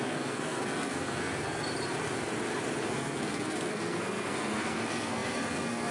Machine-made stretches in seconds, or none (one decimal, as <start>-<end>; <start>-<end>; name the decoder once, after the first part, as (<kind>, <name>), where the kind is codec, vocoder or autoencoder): 0.0-1.6 (codec, SNAC); 2.8-5.9